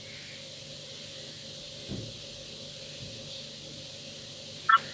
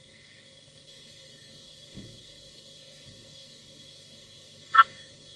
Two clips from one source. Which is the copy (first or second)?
second